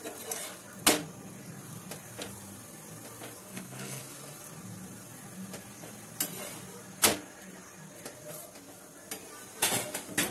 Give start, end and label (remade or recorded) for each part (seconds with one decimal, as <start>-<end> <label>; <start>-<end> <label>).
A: 0.0-3.4 recorded; 3.4-4.0 remade; 4.0-10.3 recorded